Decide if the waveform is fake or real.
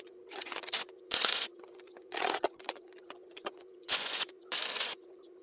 fake